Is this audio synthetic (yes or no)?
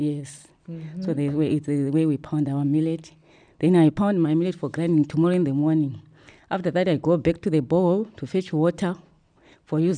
no